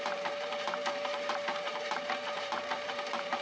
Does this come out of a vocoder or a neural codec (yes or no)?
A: yes